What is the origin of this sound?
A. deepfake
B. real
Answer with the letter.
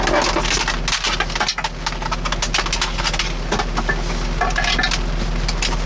B